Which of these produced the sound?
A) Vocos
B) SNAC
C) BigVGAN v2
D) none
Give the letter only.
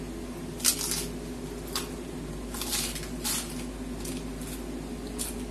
D